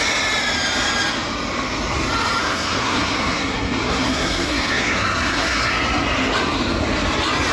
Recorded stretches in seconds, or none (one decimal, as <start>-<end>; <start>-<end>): 0.0-2.4; 5.7-7.5

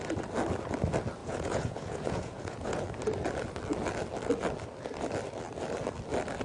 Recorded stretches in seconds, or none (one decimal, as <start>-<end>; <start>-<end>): 0.0-1.2; 2.8-6.4

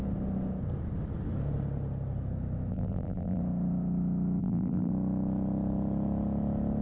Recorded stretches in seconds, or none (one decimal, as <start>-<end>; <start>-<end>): 0.0-2.7; 3.4-4.4; 4.9-6.8

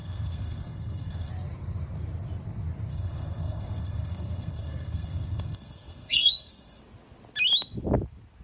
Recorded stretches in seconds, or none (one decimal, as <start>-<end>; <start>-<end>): 1.3-2.9; 6.8-8.4

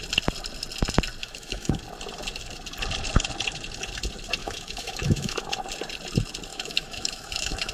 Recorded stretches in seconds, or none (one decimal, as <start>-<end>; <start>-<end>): 0.0-1.2; 1.8-4.4; 5.5-6.5

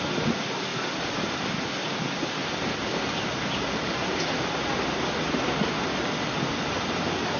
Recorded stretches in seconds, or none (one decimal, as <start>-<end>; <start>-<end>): 0.0-7.4

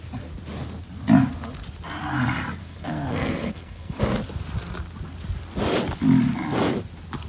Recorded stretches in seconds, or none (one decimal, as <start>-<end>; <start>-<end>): 0.0-2.6; 4.0-7.3

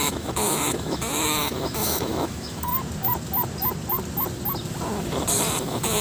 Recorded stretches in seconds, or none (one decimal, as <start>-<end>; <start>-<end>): 2.7-5.6